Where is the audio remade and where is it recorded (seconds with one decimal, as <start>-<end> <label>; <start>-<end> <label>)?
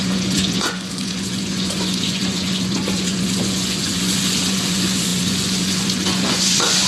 0.0-6.9 remade